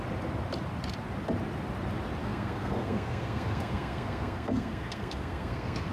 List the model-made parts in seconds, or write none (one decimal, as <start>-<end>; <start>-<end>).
2.2-5.9